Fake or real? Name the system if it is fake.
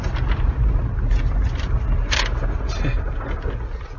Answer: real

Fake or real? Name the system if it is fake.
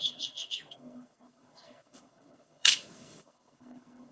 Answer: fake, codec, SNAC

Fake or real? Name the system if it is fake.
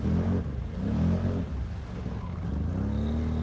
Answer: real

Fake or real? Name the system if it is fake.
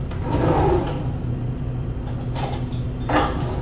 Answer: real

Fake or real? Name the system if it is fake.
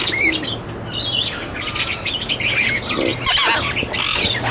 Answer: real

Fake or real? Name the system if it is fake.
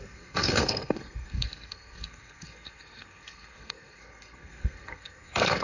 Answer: fake, codec, SNAC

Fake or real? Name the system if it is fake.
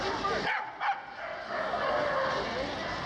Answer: real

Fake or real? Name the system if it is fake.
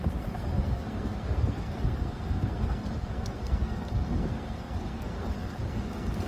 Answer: fake, codec, SNAC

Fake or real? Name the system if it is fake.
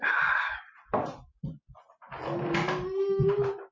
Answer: real